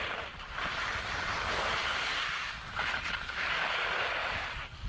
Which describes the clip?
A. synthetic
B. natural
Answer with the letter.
B